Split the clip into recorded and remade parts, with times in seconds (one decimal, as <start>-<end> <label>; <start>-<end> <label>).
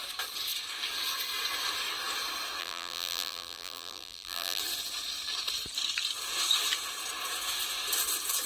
0.0-2.6 recorded; 2.6-4.6 remade; 4.6-8.5 recorded